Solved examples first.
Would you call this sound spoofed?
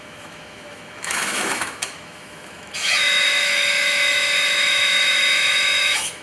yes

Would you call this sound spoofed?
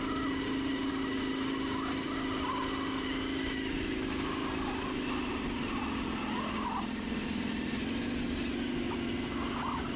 no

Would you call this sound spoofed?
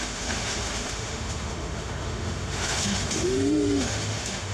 yes